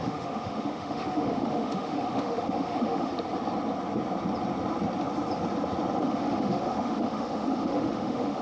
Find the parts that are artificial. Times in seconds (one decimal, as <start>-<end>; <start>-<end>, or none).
0.0-3.1; 6.0-8.4